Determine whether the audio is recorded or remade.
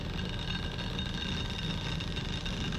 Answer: recorded